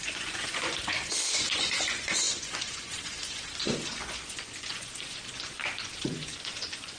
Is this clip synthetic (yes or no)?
yes